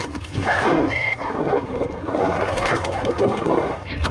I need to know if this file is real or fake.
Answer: fake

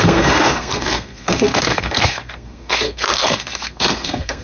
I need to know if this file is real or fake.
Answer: fake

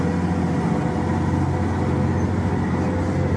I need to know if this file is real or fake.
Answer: real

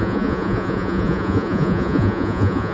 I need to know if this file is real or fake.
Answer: fake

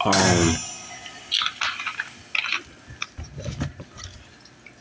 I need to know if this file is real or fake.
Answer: real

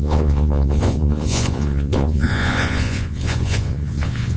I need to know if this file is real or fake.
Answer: fake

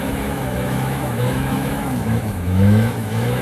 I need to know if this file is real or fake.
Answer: fake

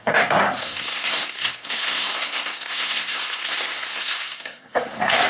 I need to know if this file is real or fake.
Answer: fake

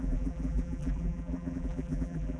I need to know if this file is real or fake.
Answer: fake